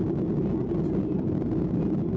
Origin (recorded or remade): recorded